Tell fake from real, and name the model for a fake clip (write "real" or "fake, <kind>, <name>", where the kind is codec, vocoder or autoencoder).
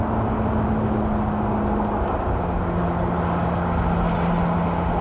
real